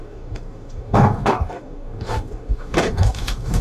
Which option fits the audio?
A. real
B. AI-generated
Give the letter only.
B